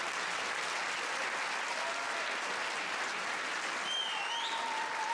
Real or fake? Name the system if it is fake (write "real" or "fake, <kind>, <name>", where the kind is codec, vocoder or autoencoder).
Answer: real